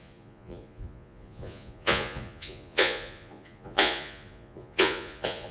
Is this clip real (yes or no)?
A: no